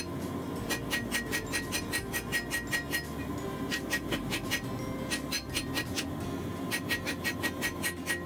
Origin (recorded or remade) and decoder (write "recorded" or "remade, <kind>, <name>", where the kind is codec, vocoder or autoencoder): recorded